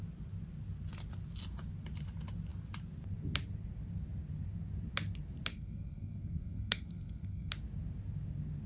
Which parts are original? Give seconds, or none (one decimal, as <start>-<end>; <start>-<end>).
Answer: 0.0-5.5; 7.5-8.7

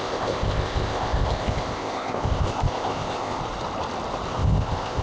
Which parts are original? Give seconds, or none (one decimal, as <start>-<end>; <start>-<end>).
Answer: 3.4-4.3